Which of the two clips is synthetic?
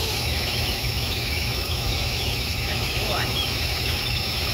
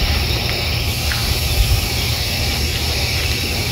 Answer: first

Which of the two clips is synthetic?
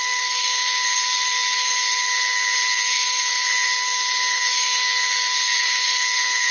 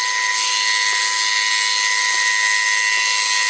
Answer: first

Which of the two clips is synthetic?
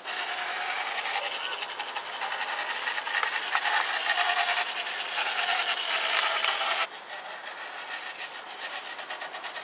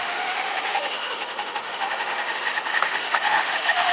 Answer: second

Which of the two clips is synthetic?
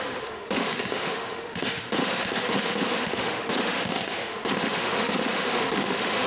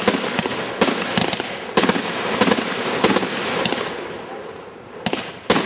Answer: first